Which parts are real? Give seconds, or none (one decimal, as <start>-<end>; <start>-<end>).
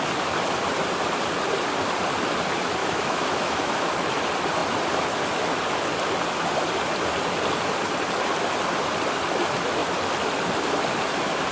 0.0-2.8; 3.9-11.5